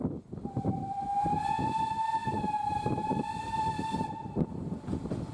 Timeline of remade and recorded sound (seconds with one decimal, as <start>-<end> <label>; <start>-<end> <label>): 0.0-2.2 recorded; 2.2-4.7 remade; 4.7-5.3 recorded